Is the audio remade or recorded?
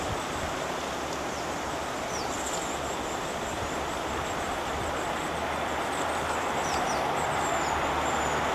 recorded